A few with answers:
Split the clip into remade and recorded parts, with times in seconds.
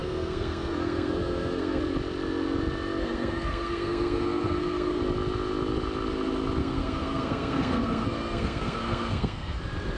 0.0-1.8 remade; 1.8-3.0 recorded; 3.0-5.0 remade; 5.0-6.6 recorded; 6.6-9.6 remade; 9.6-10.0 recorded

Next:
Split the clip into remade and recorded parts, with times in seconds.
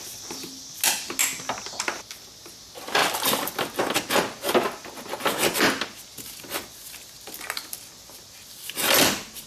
0.0-3.0 recorded; 3.0-3.8 remade; 3.8-9.5 recorded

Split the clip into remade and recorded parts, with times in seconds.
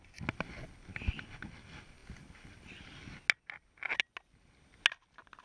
0.0-5.4 recorded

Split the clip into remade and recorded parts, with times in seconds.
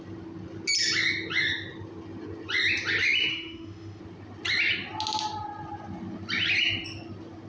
0.0-3.3 recorded; 3.3-4.0 remade; 4.0-7.5 recorded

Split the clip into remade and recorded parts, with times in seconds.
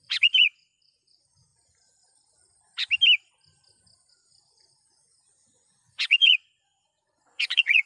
0.0-1.5 remade; 1.5-4.1 recorded; 4.1-7.9 remade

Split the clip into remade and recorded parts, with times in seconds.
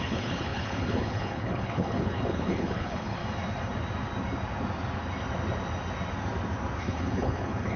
0.0-3.2 remade; 3.2-6.8 recorded; 6.8-7.8 remade